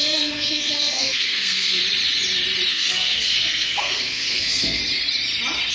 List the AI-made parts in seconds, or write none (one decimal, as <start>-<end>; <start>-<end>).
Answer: 0.0-1.8; 2.7-4.8